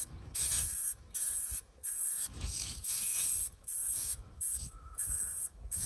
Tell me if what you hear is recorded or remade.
remade